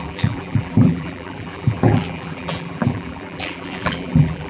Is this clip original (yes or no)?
no